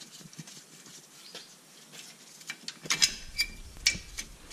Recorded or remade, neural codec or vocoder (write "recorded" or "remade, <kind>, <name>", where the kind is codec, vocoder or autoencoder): recorded